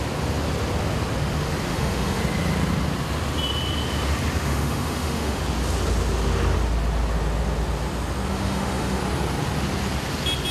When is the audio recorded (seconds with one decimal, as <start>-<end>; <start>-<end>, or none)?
0.0-1.7; 2.2-4.4; 5.4-8.3; 9.0-10.5